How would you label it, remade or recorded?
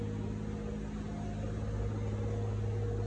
recorded